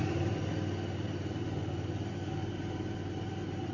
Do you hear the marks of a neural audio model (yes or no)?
no